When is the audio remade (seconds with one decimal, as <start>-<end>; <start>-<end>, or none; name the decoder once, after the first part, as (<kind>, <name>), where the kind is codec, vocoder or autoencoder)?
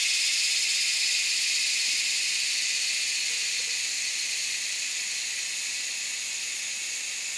none